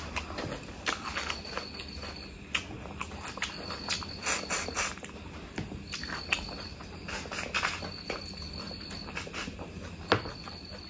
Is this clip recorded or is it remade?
recorded